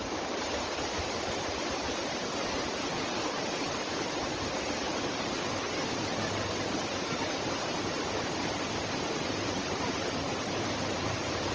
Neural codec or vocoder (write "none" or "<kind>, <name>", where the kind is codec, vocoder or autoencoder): vocoder, BigVGAN v2